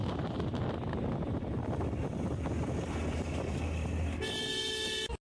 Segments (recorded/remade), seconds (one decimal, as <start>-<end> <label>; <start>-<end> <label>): 0.0-5.2 recorded